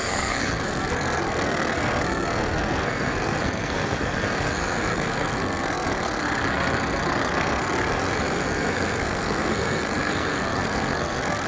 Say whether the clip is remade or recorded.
remade